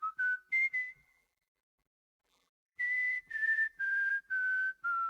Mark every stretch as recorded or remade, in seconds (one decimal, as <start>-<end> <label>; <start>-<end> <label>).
0.0-1.0 recorded; 1.0-4.1 remade; 4.1-5.1 recorded